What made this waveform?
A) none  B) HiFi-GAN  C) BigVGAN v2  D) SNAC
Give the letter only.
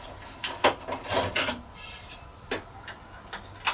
A